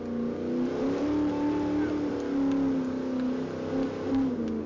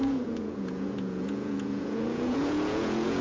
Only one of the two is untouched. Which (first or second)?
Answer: first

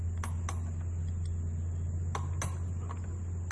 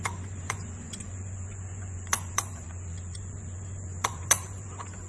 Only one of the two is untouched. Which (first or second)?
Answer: first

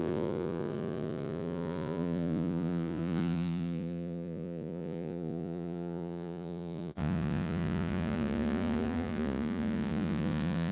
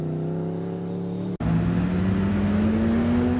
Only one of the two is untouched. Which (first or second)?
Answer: second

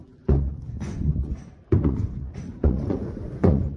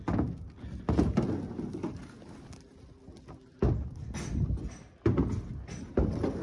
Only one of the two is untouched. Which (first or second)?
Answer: second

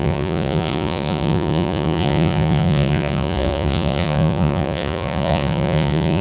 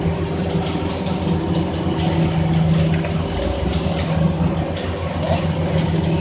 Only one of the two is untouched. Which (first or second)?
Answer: second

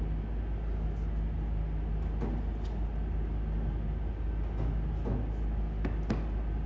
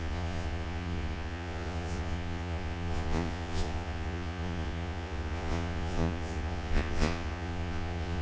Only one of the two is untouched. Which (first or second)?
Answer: first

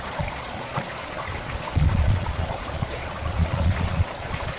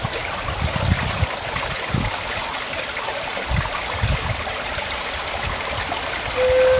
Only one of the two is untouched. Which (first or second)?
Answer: second